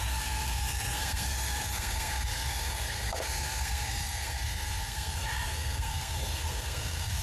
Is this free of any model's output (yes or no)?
no